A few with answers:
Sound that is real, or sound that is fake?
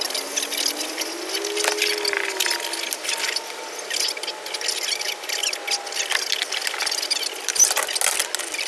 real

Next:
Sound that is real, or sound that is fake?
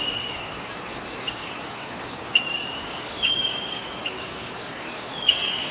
fake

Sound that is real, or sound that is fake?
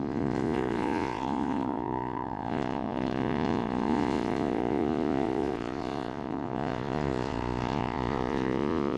fake